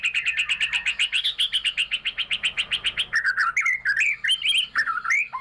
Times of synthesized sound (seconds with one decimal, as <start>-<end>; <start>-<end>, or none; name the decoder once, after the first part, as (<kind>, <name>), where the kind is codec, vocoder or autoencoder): none